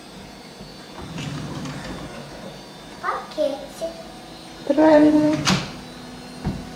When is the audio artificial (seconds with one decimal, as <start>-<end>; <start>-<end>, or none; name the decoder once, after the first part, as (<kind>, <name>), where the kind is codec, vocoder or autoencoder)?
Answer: 0.7-1.7 (vocoder, BigVGAN v2); 2.2-3.2; 4.0-5.6